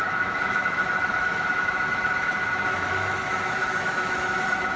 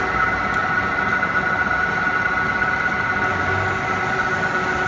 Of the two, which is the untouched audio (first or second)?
second